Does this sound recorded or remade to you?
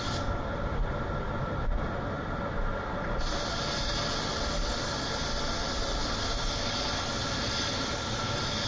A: recorded